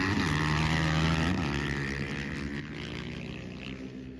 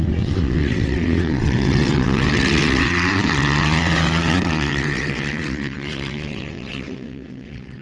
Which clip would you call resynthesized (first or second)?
second